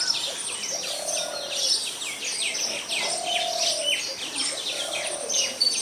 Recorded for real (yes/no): yes